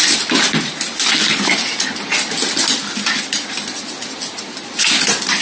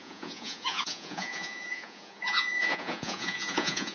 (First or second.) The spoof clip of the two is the second